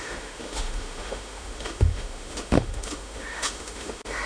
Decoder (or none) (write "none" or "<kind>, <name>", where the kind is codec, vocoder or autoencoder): autoencoder, DAC-VAE